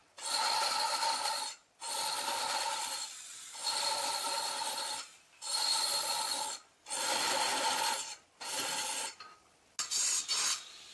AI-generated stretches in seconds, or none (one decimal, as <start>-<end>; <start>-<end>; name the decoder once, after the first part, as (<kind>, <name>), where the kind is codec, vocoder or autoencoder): 1.6-2.8 (vocoder, BigVGAN v2); 3.6-4.4